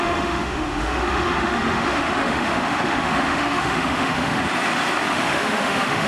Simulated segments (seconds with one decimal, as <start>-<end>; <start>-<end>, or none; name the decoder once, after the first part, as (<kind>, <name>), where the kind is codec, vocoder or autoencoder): 0.0-4.4 (autoencoder, DAC-VAE); 5.1-6.1